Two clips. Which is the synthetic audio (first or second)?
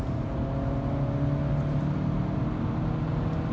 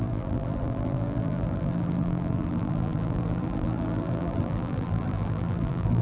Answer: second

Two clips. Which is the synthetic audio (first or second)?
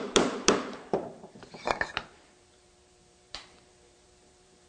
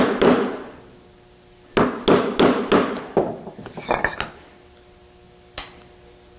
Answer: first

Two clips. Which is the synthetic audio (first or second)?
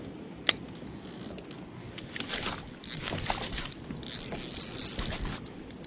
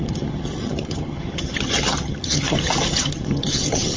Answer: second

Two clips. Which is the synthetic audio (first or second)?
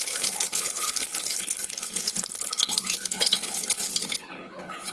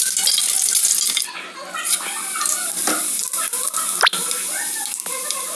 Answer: first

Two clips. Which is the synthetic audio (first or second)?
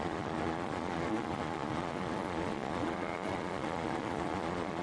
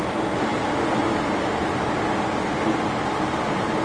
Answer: first